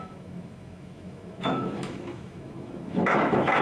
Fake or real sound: fake